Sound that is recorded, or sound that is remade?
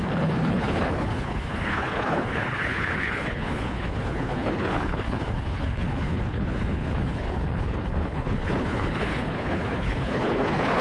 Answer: remade